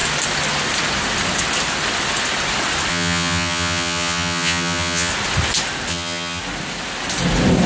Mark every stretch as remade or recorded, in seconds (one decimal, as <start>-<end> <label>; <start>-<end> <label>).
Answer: 0.0-2.9 recorded; 2.9-5.1 remade; 5.1-5.9 recorded; 5.9-6.4 remade; 6.4-7.7 recorded